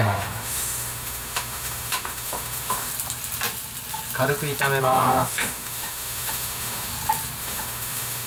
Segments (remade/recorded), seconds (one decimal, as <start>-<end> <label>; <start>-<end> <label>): 0.0-2.9 remade; 2.9-4.8 recorded; 4.8-6.9 remade; 6.9-7.4 recorded; 7.4-8.3 remade